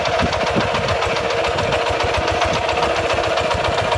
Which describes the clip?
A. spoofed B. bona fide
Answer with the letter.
B